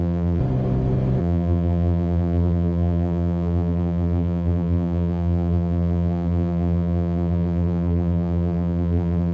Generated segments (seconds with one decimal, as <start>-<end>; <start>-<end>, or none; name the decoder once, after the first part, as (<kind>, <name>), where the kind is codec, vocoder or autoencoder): 0.0-0.4 (vocoder, BigVGAN v2); 1.2-9.3